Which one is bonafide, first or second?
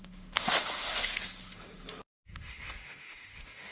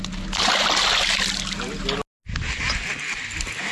second